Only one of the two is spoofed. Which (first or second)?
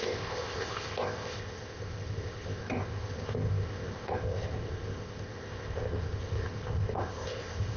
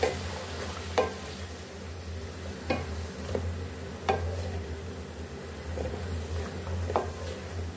first